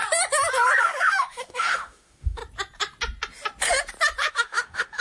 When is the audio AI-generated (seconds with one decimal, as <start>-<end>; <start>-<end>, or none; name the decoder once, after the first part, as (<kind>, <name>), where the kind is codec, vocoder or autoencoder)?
0.8-2.4 (autoencoder, DAC-VAE); 4.3-5.0